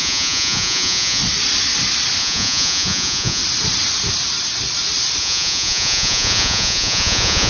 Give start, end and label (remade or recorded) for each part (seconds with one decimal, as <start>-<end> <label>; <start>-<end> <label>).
0.0-1.2 remade; 1.2-2.2 recorded; 2.2-3.4 remade; 3.4-5.2 recorded; 5.2-7.5 remade